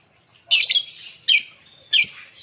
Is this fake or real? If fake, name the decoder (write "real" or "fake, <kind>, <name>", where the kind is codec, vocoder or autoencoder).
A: real